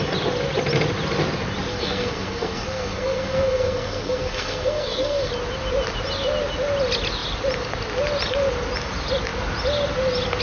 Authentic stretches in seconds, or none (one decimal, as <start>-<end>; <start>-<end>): 0.0-1.7; 5.3-10.4